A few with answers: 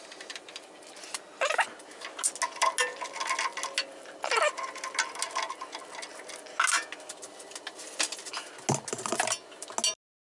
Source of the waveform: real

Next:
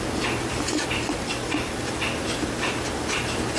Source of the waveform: real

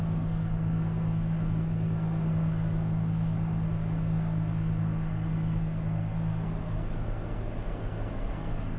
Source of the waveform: fake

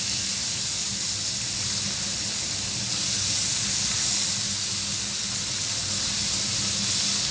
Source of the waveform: real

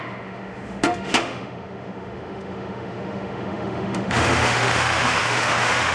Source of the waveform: fake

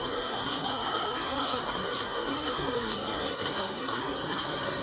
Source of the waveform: fake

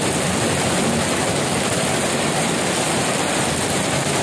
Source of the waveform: real